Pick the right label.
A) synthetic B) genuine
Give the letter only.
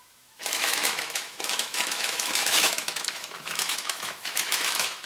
A